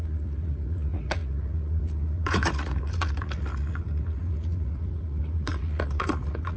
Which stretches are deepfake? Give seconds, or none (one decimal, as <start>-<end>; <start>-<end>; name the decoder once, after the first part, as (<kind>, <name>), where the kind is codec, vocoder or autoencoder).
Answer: 0.0-6.6 (vocoder, Vocos)